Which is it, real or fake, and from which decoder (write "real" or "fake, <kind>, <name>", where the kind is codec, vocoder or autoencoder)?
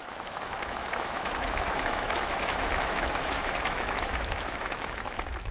fake, autoencoder, DAC-VAE